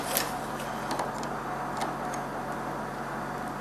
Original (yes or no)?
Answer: yes